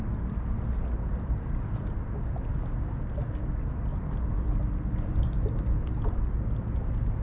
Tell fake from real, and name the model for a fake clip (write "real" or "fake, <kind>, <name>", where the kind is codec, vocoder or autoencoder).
real